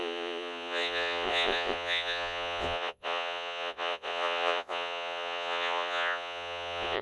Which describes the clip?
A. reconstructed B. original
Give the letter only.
A